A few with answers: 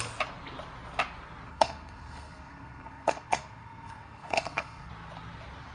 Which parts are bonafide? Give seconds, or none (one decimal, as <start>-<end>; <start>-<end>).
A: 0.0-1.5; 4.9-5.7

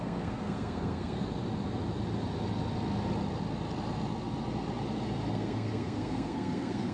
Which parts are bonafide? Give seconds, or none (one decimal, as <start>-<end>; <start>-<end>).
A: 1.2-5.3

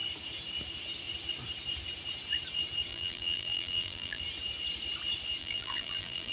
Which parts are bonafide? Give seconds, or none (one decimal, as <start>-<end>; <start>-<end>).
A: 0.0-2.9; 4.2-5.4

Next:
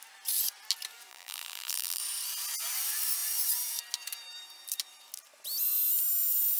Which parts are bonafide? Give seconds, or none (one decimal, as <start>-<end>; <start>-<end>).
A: 0.0-1.1; 2.0-6.6

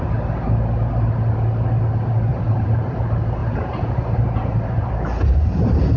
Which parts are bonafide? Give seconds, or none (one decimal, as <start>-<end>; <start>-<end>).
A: 0.0-2.3; 2.9-3.4; 4.9-6.0

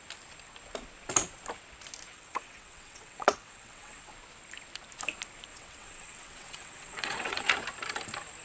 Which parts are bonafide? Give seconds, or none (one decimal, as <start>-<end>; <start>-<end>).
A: 0.0-2.1; 4.1-5.5; 7.5-8.4

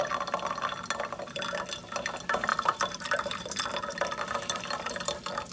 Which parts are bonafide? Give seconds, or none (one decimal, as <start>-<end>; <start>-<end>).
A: 0.0-2.5; 4.8-5.5